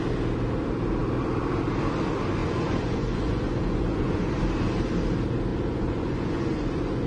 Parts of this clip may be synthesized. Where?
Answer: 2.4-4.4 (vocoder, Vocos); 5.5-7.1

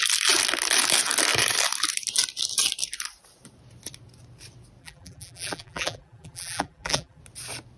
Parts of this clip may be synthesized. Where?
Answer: 4.8-7.2 (vocoder, BigVGAN v2)

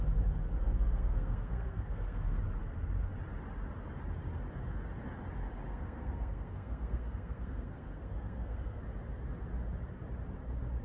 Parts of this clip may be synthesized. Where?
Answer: 0.6-2.4 (codec, SNAC); 5.7-8.8

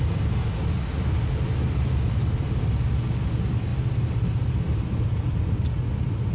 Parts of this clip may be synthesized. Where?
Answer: none

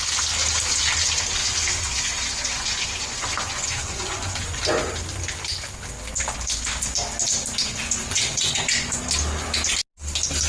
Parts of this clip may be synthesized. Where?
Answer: 1.4-4.6 (vocoder, Vocos); 7.6-9.0

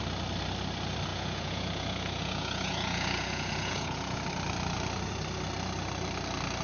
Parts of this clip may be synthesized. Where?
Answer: 1.1-4.2 (vocoder, Vocos)